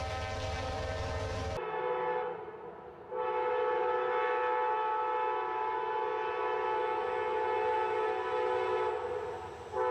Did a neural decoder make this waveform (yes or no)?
no